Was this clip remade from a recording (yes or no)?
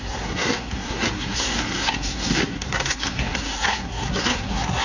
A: yes